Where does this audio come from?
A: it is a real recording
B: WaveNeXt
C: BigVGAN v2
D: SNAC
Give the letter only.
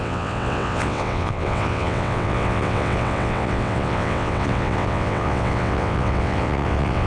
B